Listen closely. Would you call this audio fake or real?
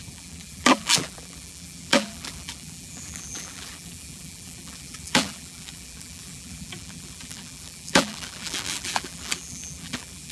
fake